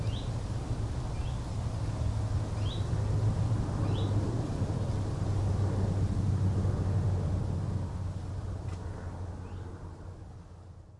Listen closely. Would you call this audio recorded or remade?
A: recorded